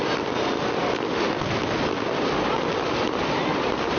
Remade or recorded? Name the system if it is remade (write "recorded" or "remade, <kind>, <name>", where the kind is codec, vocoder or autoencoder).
recorded